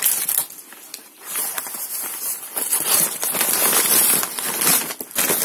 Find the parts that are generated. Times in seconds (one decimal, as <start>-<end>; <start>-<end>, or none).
none